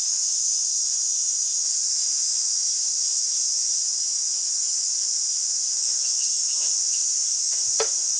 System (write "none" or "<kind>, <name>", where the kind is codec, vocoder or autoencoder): autoencoder, DAC-VAE